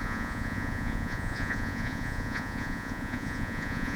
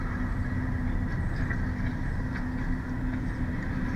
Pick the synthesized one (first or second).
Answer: first